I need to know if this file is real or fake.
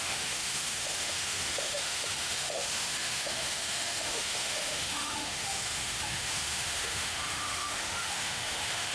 fake